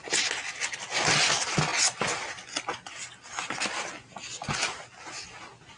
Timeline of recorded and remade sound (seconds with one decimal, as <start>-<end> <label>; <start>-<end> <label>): 0.0-5.8 recorded